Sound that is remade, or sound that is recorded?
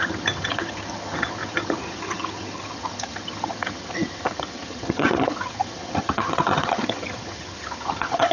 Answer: remade